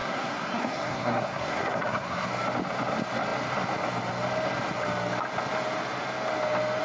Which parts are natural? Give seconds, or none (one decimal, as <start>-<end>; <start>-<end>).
2.3-6.8